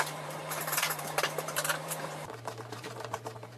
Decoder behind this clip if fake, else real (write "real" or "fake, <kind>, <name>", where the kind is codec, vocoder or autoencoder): fake, vocoder, BigVGAN v2